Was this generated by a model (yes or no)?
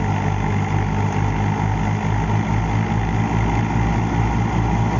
no